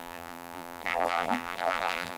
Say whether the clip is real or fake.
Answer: fake